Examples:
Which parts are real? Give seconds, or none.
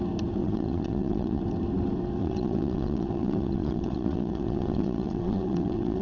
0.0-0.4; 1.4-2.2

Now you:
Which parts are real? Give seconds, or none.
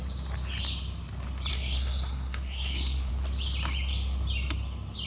0.0-1.5; 3.1-5.1